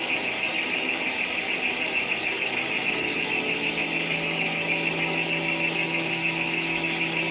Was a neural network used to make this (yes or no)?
yes